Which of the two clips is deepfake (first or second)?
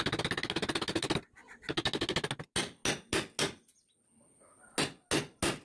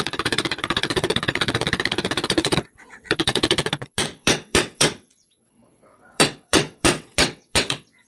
second